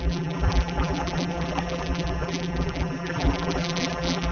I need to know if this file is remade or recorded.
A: remade